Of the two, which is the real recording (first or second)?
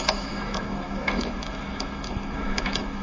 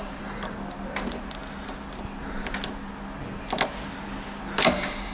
second